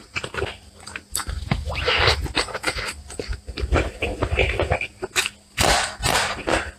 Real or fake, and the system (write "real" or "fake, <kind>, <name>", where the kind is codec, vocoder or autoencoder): real